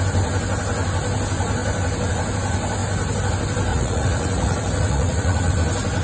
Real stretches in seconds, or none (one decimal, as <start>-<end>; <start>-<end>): 0.0-3.7; 5.5-6.0